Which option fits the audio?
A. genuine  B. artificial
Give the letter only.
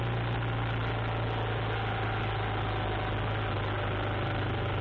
A